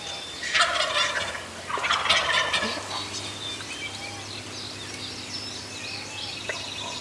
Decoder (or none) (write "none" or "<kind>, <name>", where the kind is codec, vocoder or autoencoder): none